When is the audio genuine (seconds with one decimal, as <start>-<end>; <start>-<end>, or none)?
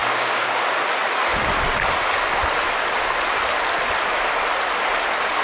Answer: 0.6-5.4